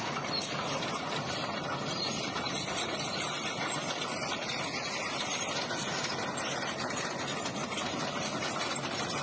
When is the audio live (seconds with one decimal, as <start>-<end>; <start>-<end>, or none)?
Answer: 0.0-1.4; 5.4-9.2